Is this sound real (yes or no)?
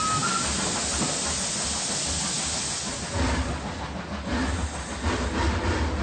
yes